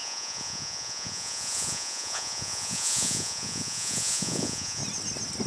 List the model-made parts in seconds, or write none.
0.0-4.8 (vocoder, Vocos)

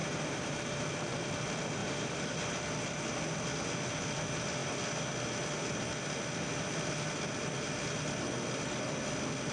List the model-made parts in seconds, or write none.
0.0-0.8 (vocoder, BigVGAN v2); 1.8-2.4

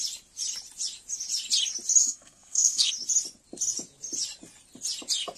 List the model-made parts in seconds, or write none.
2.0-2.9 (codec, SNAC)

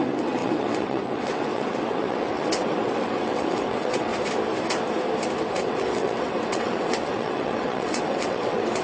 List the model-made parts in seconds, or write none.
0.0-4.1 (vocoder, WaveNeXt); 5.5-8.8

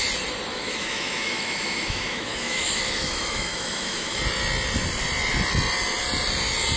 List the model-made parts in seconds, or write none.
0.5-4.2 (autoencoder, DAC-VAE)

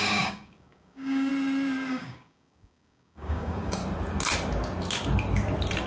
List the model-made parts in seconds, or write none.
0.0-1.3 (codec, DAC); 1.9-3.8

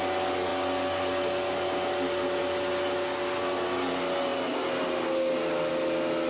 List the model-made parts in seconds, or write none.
none

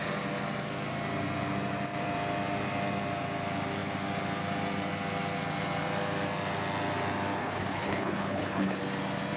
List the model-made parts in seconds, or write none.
7.4-8.8 (codec, HILCodec)